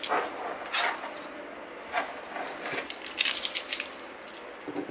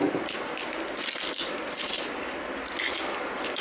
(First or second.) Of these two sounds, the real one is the first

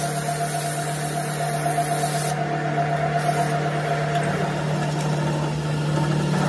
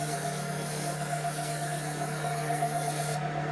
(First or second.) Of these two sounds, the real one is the first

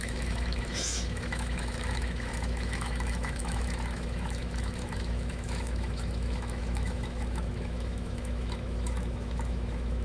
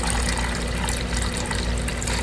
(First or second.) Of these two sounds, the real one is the second